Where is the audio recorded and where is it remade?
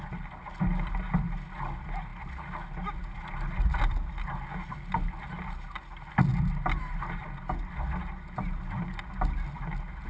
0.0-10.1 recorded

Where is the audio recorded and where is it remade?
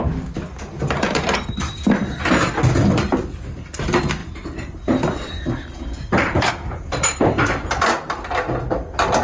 0.0-4.2 recorded; 4.2-6.5 remade; 6.5-9.2 recorded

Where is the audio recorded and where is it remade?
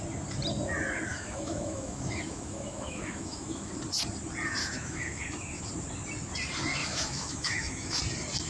0.0-1.1 recorded; 1.1-3.7 remade; 3.7-4.6 recorded; 4.6-5.6 remade; 5.6-6.8 recorded; 6.8-8.0 remade; 8.0-8.5 recorded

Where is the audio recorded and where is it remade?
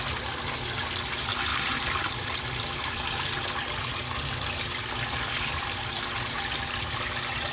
0.0-1.5 recorded; 1.5-6.0 remade; 6.0-7.5 recorded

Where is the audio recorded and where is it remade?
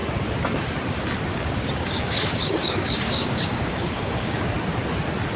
0.0-1.3 recorded; 1.3-4.5 remade; 4.5-5.4 recorded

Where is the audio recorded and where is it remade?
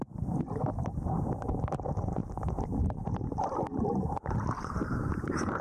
0.0-5.6 recorded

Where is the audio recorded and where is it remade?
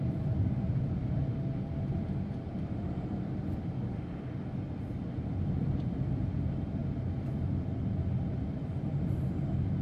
0.0-6.8 remade; 6.8-8.5 recorded; 8.5-9.8 remade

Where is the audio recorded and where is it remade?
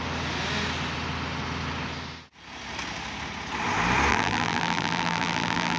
0.0-4.1 recorded; 4.1-5.8 remade